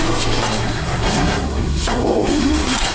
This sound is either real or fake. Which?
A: fake